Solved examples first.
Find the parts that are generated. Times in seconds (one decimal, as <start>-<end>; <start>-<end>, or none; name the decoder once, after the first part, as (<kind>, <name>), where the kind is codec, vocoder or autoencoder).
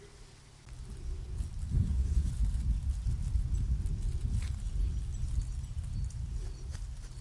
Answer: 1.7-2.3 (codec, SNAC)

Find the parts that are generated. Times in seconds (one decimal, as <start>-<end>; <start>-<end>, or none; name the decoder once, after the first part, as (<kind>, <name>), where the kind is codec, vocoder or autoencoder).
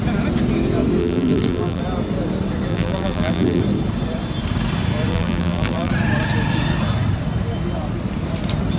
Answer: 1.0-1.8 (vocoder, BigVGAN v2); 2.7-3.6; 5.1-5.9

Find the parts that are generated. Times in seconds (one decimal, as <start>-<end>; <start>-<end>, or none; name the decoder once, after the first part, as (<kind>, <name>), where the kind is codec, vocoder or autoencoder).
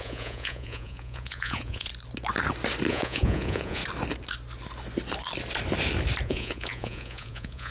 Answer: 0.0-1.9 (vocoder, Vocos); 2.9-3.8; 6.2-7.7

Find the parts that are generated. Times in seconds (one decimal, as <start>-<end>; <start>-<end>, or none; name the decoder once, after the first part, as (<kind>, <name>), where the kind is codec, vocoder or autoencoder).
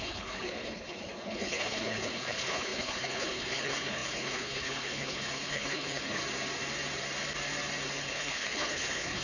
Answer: 0.0-6.2 (codec, HILCodec); 8.0-9.2